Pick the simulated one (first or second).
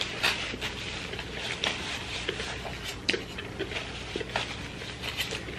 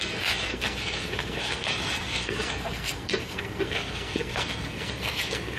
second